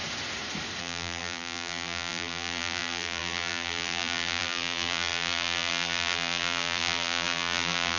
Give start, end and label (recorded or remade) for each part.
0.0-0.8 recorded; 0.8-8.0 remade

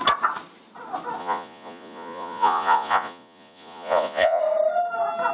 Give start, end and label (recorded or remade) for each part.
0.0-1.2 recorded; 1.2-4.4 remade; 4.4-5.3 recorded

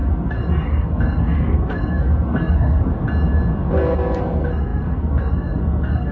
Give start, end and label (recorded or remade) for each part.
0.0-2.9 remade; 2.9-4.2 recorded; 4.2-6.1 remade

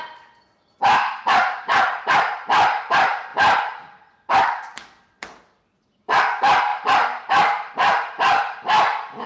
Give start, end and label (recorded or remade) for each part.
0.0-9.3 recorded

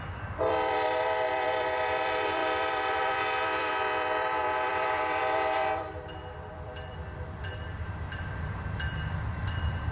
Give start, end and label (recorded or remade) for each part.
0.0-9.9 remade

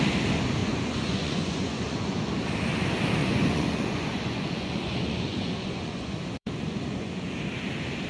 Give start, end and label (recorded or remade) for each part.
0.0-0.6 recorded; 0.6-2.3 remade; 2.3-3.2 recorded; 3.2-7.4 remade; 7.4-8.1 recorded